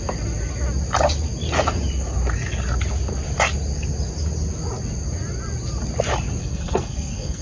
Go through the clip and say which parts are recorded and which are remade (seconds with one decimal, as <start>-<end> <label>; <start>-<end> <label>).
0.0-6.4 recorded; 6.4-7.4 remade